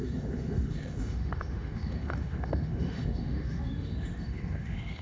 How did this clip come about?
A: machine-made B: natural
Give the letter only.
A